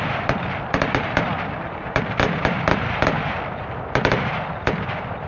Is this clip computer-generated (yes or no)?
yes